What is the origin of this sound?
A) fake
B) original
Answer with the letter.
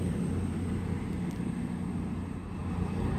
B